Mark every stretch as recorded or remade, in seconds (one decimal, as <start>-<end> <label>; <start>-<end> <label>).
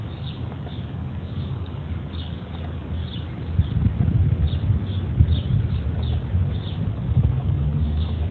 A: 0.0-3.0 remade; 3.0-6.9 recorded; 6.9-8.3 remade